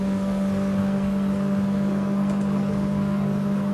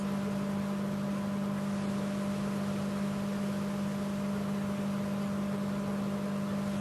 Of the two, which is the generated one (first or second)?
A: first